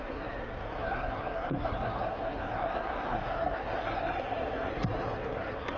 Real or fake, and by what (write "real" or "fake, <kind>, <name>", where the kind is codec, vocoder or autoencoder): fake, codec, SNAC